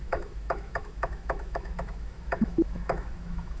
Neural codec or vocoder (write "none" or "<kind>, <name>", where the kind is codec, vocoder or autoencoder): autoencoder, DAC-VAE